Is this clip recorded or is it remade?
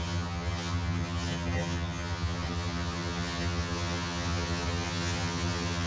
remade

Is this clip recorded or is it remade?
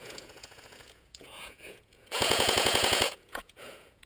remade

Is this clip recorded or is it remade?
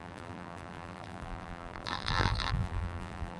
remade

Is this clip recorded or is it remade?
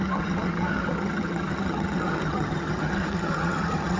remade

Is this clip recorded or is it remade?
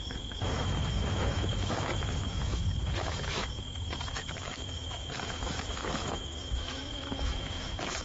remade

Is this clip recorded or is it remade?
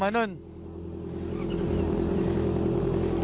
recorded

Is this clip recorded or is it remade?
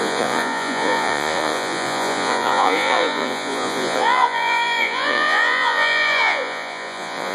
remade